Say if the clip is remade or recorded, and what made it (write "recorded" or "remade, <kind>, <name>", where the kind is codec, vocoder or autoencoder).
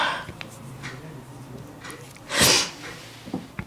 recorded